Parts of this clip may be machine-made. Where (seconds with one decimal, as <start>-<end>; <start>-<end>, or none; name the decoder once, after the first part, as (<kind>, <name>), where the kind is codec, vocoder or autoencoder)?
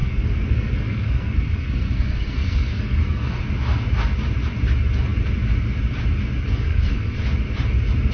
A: 0.0-3.4 (codec, SNAC); 6.5-7.2